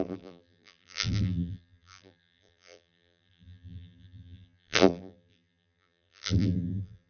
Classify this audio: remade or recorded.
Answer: remade